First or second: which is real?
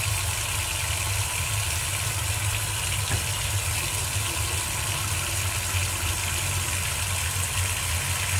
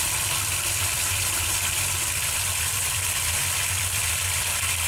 first